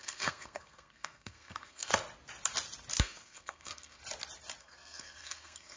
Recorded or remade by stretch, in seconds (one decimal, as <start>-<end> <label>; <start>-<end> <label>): 0.0-1.9 remade; 1.9-3.0 recorded; 3.0-4.0 remade; 4.0-4.6 recorded; 4.6-5.8 remade